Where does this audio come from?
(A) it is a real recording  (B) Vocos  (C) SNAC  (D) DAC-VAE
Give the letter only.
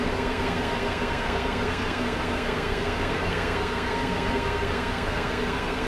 C